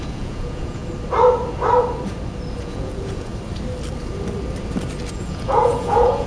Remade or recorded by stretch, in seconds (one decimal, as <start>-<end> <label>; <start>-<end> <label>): 0.0-0.8 remade; 0.8-2.6 recorded; 2.6-3.3 remade; 3.3-5.1 recorded; 5.1-6.3 remade